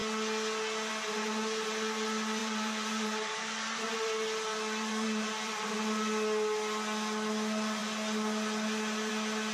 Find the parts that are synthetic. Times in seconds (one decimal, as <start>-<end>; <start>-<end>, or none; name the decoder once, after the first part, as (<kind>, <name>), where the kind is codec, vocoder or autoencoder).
2.4-5.7 (vocoder, BigVGAN v2)